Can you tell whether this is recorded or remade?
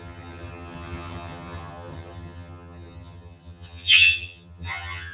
remade